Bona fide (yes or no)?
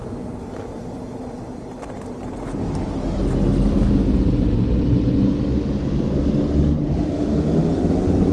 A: yes